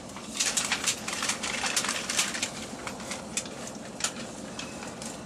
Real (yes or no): yes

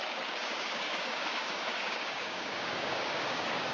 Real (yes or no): no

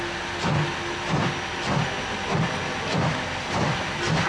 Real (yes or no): yes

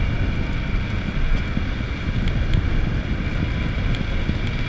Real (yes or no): yes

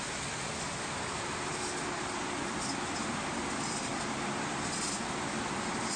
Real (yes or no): no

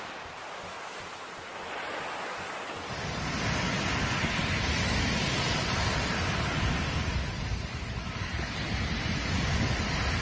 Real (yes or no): yes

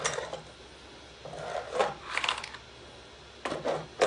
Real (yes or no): yes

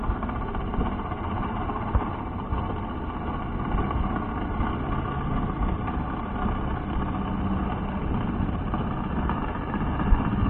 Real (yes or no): yes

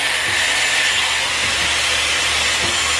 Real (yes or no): yes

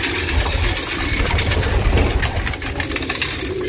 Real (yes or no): yes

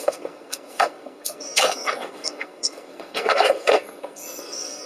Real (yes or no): no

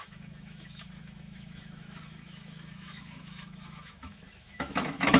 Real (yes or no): no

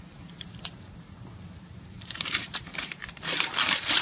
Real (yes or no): no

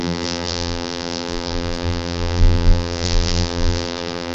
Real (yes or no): no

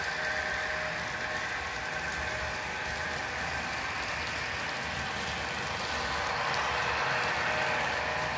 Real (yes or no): yes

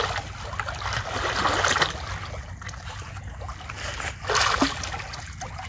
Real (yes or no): yes